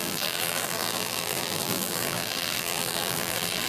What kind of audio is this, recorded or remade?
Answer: remade